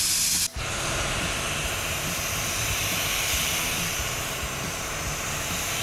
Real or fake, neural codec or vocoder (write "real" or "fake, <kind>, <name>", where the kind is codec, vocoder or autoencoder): real